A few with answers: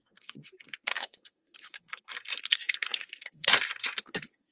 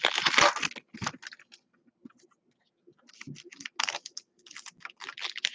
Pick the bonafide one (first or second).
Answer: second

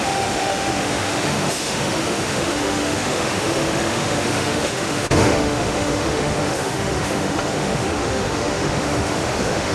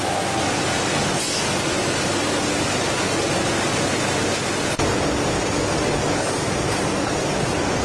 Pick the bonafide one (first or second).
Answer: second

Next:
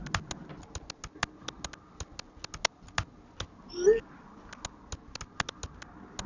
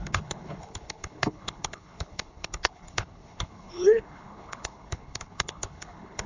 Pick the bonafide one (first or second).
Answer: first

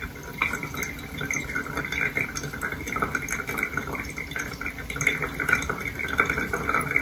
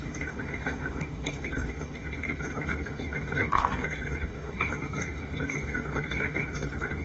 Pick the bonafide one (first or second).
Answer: first